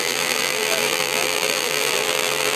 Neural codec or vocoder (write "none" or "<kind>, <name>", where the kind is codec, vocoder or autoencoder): vocoder, BigVGAN v2